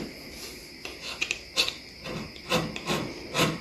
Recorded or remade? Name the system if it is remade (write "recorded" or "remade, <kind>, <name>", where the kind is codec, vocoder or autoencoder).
recorded